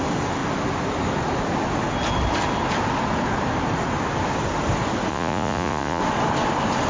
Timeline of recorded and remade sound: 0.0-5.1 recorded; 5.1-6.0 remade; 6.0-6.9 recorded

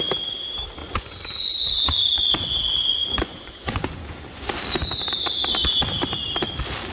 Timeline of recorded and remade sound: 0.0-0.8 recorded; 0.8-2.5 remade; 2.5-3.0 recorded; 3.0-4.6 remade; 4.6-6.9 recorded

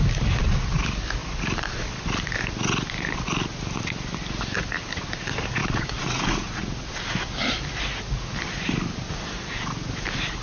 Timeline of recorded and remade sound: 0.0-5.6 recorded; 5.6-6.9 remade; 6.9-10.4 recorded

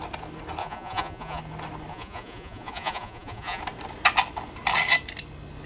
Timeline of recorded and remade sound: 0.0-0.6 recorded; 0.6-1.4 remade; 1.4-1.9 recorded; 1.9-3.6 remade; 3.6-5.7 recorded

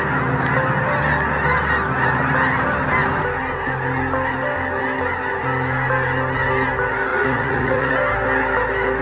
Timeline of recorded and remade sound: 0.0-7.1 recorded; 7.1-7.9 remade; 7.9-9.0 recorded

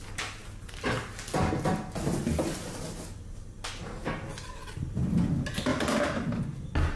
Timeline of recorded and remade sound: 0.0-7.0 recorded

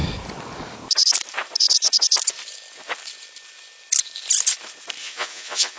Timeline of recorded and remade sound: 0.0-5.0 recorded; 5.0-5.8 remade

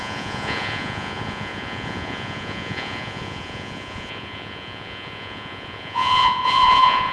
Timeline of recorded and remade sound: 0.0-7.1 remade